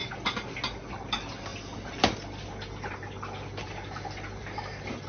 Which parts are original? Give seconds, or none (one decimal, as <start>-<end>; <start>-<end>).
0.0-5.1

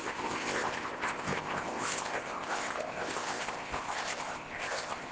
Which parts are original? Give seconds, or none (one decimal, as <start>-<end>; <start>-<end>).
none

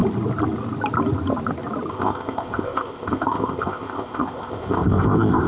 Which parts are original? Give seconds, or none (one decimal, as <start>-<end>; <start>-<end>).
0.0-1.9

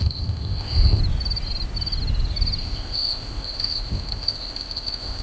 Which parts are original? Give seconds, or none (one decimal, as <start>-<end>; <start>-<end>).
1.0-2.6